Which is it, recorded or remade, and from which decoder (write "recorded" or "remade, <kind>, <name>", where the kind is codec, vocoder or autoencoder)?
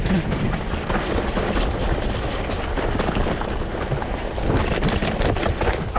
recorded